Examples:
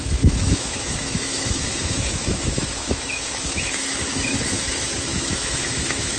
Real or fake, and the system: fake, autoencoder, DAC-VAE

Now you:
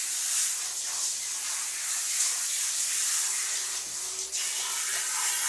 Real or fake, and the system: real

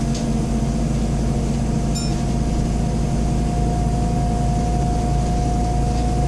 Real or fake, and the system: real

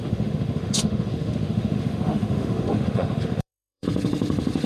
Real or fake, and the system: fake, autoencoder, DAC-VAE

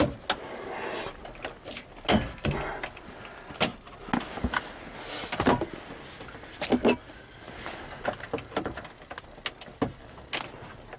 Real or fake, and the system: real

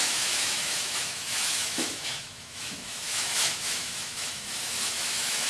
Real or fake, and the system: fake, autoencoder, DAC-VAE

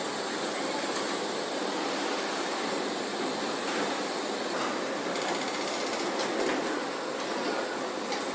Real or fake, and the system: real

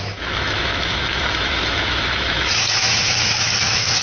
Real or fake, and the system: fake, autoencoder, DAC-VAE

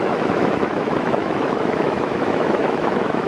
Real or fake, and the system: fake, autoencoder, DAC-VAE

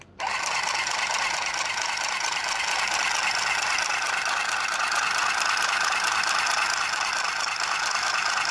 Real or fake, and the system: real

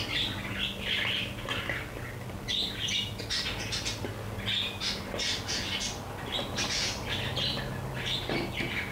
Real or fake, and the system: real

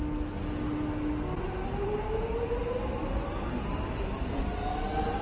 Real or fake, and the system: real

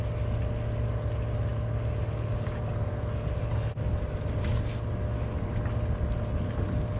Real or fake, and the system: real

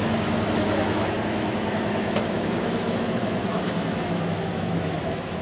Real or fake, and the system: fake, autoencoder, DAC-VAE